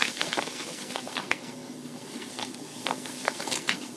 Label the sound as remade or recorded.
remade